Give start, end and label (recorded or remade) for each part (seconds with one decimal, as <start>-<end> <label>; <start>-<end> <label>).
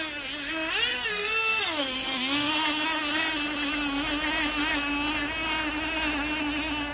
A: 0.0-0.9 recorded; 0.9-2.5 remade; 2.5-6.9 recorded